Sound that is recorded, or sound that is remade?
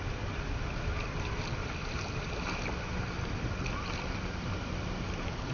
recorded